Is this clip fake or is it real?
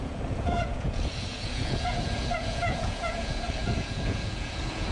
fake